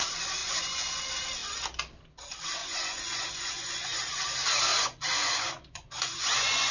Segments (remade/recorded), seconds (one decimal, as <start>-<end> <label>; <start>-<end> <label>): 0.0-0.4 recorded; 0.4-1.0 remade; 1.0-2.6 recorded; 2.6-4.0 remade; 4.0-4.7 recorded; 4.7-6.7 remade